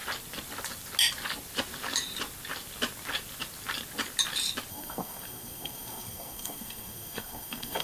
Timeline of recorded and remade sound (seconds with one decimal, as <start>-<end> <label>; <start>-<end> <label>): 0.0-4.7 recorded; 4.7-7.8 remade